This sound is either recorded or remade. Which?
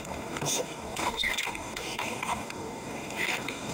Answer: remade